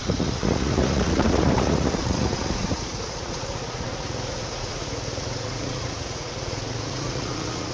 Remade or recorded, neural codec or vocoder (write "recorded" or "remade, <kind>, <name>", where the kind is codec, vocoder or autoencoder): remade, vocoder, Vocos